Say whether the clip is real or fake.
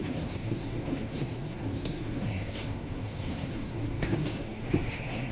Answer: fake